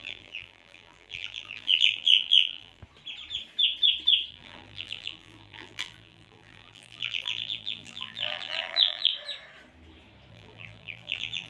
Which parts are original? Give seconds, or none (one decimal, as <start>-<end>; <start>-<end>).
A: 2.8-4.3; 9.1-10.3